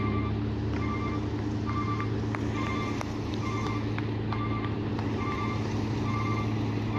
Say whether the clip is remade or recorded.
recorded